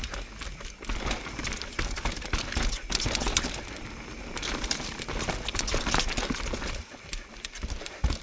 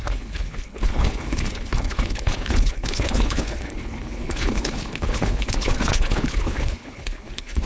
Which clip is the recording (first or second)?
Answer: first